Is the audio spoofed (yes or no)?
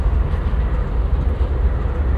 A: no